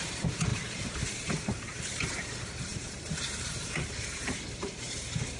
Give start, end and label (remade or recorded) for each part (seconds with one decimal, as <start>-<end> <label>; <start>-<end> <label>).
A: 0.0-0.5 recorded; 0.5-1.8 remade; 1.8-2.7 recorded; 2.7-3.9 remade; 3.9-5.4 recorded